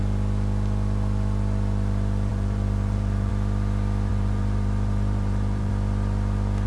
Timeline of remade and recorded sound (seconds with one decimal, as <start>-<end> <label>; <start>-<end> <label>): 0.0-2.3 recorded; 2.3-3.3 remade; 3.3-4.1 recorded; 4.1-5.7 remade; 5.7-6.7 recorded